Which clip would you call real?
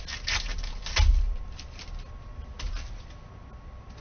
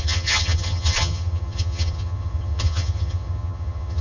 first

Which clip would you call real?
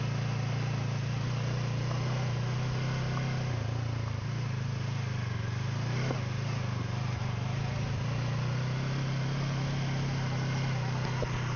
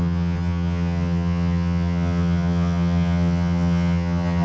first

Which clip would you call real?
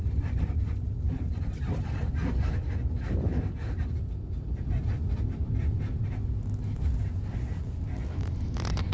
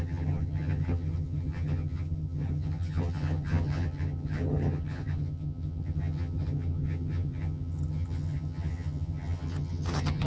first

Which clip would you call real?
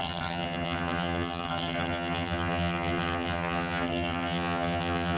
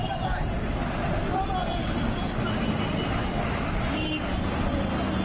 second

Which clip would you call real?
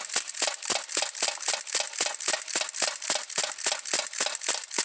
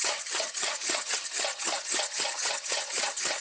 first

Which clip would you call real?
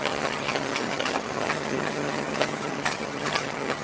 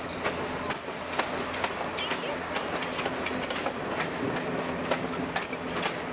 second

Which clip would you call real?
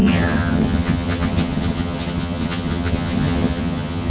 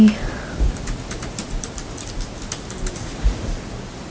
second